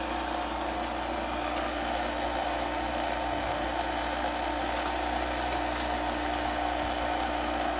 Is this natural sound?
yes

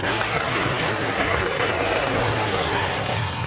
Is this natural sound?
no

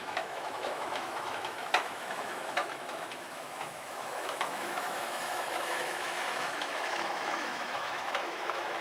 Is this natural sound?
no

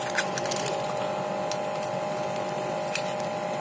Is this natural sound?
yes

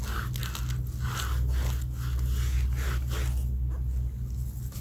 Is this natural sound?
yes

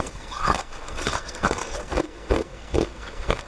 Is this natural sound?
no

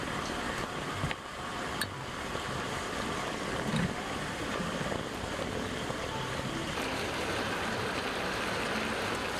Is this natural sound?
no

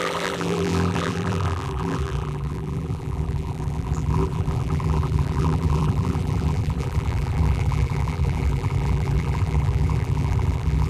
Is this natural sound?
no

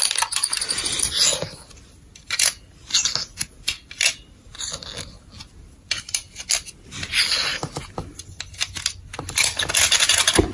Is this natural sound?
yes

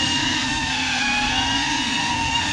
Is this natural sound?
no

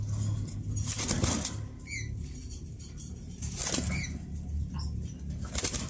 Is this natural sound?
yes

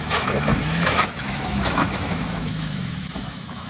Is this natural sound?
no